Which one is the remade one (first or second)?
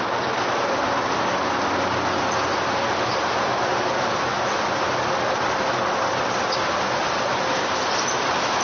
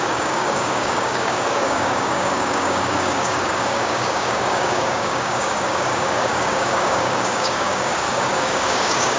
second